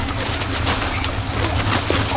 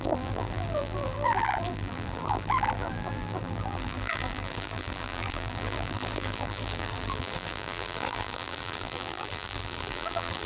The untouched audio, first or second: first